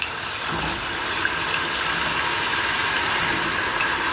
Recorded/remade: recorded